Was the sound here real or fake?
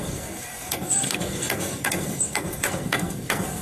fake